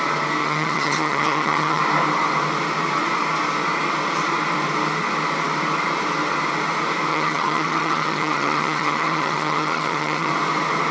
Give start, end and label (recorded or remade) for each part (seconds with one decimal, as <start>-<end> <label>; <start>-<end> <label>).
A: 0.0-0.4 recorded; 0.4-1.8 remade; 1.8-7.1 recorded; 7.1-10.3 remade; 10.3-10.9 recorded